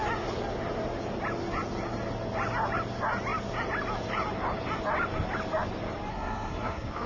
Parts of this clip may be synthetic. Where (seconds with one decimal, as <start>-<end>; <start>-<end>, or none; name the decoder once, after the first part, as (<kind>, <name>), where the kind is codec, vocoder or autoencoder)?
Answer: 6.1-7.1 (codec, SNAC)